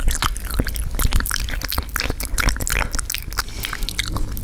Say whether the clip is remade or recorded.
recorded